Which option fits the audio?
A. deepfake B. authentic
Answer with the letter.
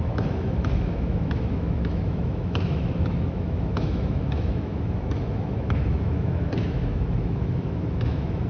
A